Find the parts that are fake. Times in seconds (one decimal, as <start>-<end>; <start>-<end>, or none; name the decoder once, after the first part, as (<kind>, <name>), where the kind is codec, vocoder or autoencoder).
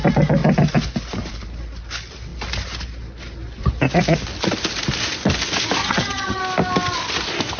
5.8-6.4 (vocoder, HiFi-GAN)